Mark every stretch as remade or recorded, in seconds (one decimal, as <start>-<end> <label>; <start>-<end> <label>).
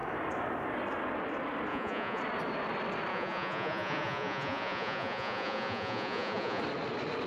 0.0-1.7 recorded; 1.7-2.2 remade; 2.2-3.1 recorded; 3.1-6.6 remade; 6.6-7.3 recorded